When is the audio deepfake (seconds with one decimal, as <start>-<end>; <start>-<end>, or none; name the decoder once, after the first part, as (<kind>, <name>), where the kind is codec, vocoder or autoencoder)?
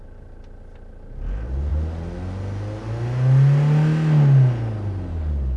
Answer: none